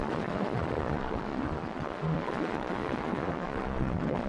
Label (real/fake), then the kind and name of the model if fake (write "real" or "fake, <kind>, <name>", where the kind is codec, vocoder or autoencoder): fake, vocoder, Vocos